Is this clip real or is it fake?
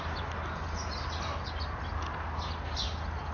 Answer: real